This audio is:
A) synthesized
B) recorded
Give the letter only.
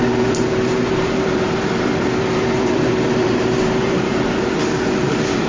A